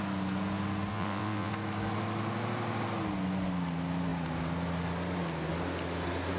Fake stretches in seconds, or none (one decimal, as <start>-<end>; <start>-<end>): 0.9-1.5

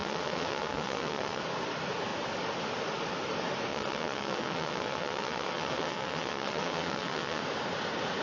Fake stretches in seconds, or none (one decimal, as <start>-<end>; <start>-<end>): 0.0-1.4; 3.7-7.4

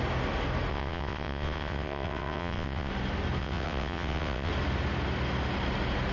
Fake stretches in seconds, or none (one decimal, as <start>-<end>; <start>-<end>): 0.7-2.9; 3.4-4.5

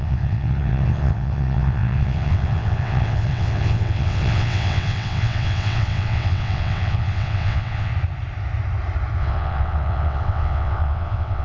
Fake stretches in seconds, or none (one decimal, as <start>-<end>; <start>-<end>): 0.0-7.9; 9.2-11.4